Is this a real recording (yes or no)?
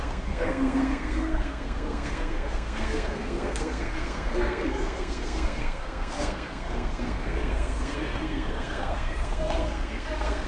no